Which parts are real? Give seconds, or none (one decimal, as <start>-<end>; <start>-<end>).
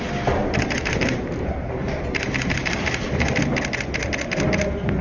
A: 0.0-0.4; 3.4-5.0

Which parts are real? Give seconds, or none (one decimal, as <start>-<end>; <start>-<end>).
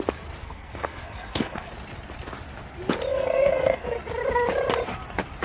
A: 0.0-0.4; 1.7-3.1; 4.0-5.4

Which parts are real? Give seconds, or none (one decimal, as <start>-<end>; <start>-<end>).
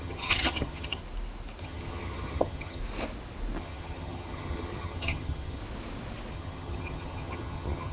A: 1.0-1.6; 2.8-3.6; 5.6-6.3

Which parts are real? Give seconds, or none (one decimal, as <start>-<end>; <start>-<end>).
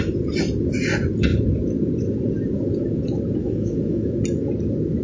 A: 0.0-3.4; 4.1-5.0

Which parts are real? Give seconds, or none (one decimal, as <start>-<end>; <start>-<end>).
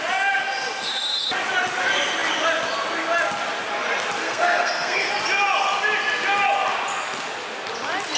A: 0.0-4.2; 5.1-8.2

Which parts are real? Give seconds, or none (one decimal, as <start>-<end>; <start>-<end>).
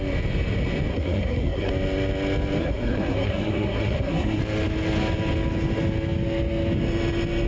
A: 0.0-0.9; 1.7-2.6; 4.4-7.5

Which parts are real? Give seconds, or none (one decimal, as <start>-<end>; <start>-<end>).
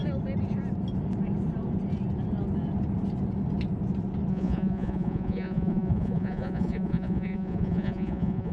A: 0.0-4.3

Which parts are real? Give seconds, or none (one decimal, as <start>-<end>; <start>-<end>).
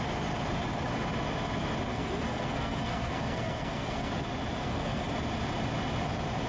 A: 0.0-1.9; 4.1-4.6; 5.1-6.5